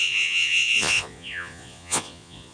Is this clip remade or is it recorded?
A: remade